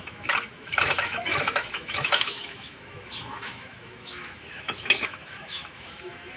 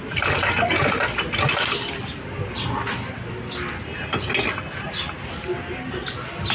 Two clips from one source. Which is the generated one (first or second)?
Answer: first